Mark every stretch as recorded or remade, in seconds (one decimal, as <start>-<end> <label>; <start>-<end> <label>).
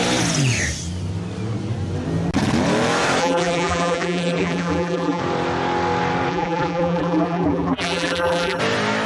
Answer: 0.0-3.2 recorded; 3.2-5.2 remade; 5.2-6.3 recorded; 6.3-8.6 remade; 8.6-9.1 recorded